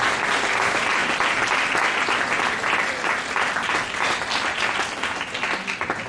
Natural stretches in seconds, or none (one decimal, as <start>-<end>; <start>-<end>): 0.0-6.1